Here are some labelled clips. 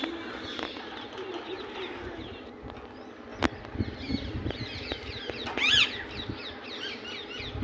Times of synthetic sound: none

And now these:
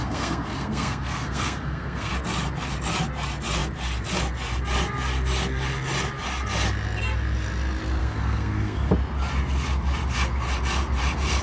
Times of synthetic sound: 0.0-2.1 (codec, SNAC); 8.0-8.9

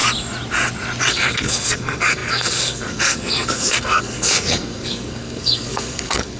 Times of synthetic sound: 1.1-6.4 (codec, SNAC)